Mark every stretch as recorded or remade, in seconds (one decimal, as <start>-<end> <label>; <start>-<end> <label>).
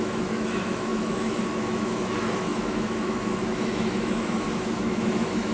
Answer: 0.0-5.5 remade